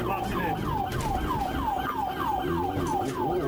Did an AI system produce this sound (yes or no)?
no